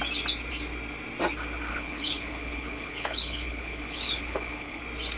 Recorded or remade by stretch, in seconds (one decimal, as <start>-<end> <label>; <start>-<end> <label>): 0.0-1.7 recorded; 1.7-4.8 remade; 4.8-5.2 recorded

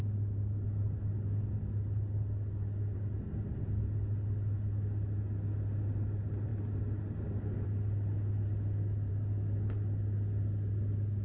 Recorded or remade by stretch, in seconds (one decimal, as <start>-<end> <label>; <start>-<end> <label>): 0.0-11.2 recorded

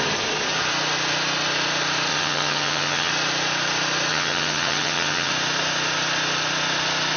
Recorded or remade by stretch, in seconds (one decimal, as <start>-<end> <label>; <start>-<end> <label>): 0.0-2.1 recorded; 2.1-3.1 remade; 3.1-4.1 recorded; 4.1-5.3 remade; 5.3-7.2 recorded